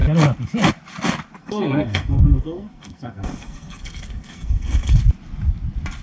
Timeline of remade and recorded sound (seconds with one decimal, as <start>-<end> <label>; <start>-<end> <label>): 0.0-1.4 recorded; 1.4-5.0 remade; 5.0-6.0 recorded